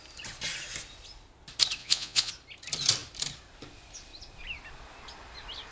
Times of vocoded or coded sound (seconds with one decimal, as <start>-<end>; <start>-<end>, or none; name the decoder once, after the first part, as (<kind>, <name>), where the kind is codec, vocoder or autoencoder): 1.8-2.3 (vocoder, Vocos)